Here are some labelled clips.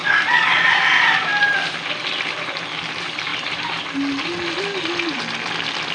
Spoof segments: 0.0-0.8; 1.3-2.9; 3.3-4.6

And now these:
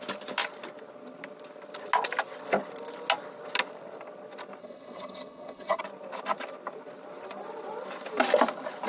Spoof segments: 4.6-5.8

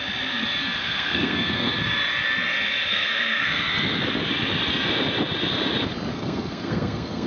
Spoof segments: 0.8-1.7; 2.9-3.7; 6.1-7.3